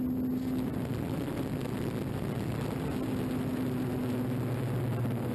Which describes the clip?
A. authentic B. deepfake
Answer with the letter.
A